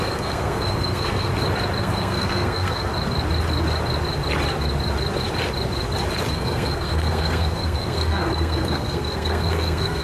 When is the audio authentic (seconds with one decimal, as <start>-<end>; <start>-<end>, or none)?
1.3-1.8; 2.9-6.3